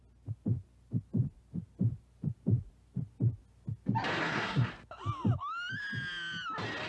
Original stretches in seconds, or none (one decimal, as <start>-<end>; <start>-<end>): 0.0-4.2; 4.7-6.9